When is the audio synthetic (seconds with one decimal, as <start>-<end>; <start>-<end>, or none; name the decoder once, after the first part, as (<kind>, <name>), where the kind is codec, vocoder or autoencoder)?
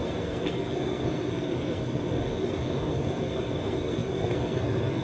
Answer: 0.0-5.0 (codec, SNAC)